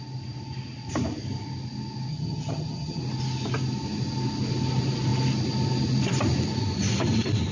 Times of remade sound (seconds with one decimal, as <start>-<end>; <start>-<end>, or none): 2.1-3.0